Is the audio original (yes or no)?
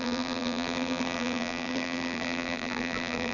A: no